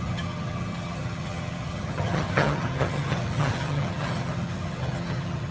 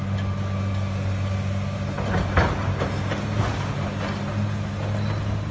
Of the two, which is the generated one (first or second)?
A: first